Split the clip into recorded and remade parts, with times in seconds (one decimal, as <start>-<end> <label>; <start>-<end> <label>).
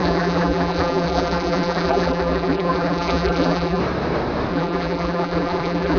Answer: 0.0-3.8 remade; 3.8-4.5 recorded; 4.5-6.0 remade